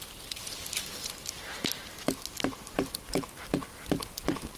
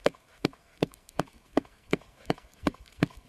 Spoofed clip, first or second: second